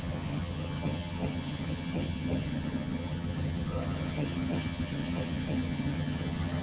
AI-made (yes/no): yes